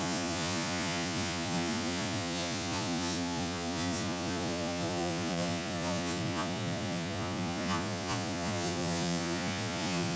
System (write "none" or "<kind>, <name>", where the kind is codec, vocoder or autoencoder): vocoder, Vocos